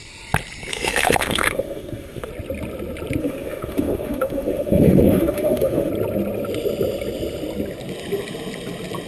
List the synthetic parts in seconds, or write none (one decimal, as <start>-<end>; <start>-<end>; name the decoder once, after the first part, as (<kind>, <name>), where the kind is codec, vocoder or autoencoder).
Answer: 0.7-2.3 (autoencoder, DAC-VAE); 3.2-5.9